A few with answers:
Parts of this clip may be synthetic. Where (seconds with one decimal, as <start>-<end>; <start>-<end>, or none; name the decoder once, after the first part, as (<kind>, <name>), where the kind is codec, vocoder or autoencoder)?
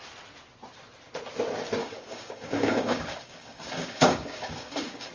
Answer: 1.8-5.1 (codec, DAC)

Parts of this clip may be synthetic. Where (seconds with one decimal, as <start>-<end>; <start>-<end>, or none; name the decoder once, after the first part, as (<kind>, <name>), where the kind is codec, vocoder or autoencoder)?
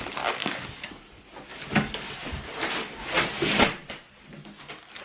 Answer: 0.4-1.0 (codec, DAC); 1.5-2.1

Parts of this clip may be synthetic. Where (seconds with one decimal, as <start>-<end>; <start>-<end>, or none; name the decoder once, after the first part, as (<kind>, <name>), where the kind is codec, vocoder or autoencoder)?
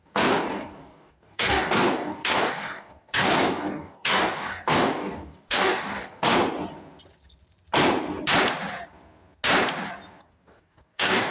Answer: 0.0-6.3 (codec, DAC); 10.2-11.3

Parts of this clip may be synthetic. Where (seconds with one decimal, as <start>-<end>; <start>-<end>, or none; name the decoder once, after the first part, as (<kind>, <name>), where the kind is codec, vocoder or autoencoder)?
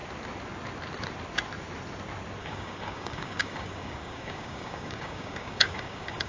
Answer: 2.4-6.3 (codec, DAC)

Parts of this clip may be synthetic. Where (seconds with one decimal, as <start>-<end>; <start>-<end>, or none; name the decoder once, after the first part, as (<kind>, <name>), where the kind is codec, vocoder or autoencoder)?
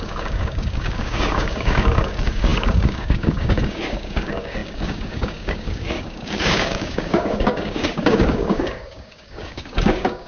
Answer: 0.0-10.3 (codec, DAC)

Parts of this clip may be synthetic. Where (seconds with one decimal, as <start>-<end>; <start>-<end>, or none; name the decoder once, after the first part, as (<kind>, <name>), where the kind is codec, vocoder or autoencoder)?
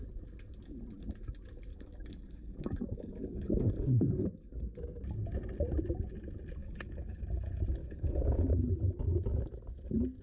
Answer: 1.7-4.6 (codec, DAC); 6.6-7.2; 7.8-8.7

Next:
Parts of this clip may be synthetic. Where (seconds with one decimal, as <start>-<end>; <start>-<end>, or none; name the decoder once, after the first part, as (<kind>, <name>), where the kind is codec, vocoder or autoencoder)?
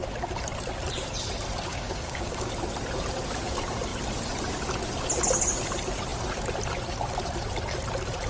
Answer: 1.7-2.5 (codec, DAC)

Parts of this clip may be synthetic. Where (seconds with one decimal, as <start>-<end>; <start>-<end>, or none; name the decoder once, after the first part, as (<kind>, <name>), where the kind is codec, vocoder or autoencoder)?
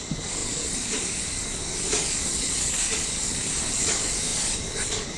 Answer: 0.0-5.2 (codec, DAC)